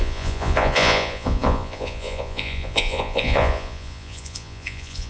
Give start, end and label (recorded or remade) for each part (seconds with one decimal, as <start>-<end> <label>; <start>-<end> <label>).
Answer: 0.0-5.1 remade